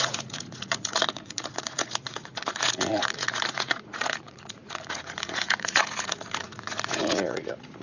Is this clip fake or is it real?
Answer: fake